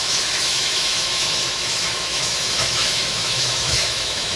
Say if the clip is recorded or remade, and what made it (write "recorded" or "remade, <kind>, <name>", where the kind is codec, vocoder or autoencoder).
remade, autoencoder, DAC-VAE